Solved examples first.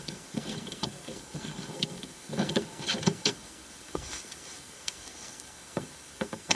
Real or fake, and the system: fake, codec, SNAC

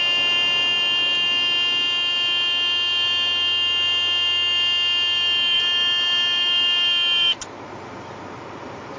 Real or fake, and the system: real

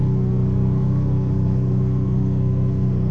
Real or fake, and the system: fake, codec, SNAC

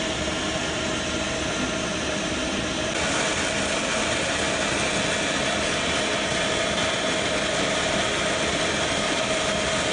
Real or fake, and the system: real